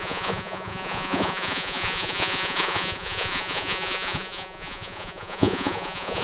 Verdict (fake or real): fake